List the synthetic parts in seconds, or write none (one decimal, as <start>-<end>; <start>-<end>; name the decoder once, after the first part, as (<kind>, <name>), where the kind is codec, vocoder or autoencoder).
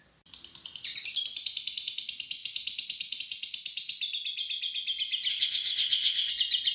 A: 5.3-6.3 (codec, ZipCodec)